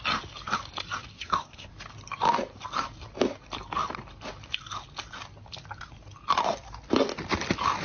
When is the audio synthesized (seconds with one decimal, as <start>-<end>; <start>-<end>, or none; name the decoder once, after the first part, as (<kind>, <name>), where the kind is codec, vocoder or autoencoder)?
1.1-1.7 (codec, SNAC)